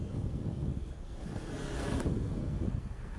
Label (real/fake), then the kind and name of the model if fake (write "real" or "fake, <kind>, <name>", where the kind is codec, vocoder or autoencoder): fake, codec, SNAC